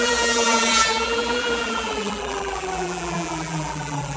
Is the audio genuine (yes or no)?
no